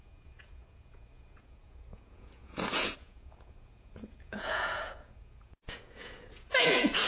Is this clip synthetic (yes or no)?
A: yes